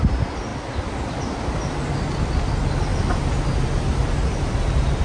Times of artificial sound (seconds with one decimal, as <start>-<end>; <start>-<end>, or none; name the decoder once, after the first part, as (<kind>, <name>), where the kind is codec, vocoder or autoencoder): none